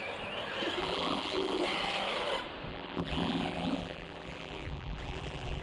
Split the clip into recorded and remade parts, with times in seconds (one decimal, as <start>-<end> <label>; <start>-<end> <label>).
0.0-0.8 recorded; 0.8-1.6 remade; 1.6-2.7 recorded; 2.7-5.6 remade